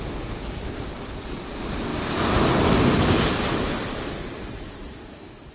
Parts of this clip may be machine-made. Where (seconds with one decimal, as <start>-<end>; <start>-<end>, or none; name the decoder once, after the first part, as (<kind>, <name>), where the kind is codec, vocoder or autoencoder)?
none